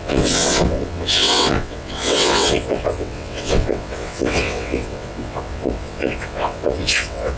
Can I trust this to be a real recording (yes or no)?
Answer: no